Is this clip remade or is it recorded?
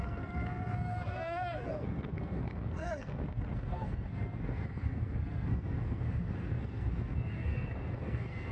remade